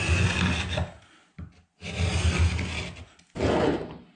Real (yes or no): yes